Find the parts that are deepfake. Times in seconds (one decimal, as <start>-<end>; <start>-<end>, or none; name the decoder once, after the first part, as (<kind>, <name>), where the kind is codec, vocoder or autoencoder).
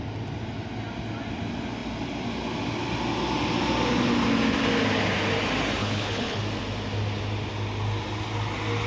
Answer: 5.8-6.4 (codec, HILCodec)